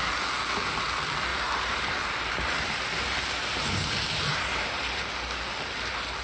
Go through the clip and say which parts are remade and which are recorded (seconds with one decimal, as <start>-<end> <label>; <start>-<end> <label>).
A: 0.0-1.3 recorded; 1.3-5.0 remade; 5.0-6.2 recorded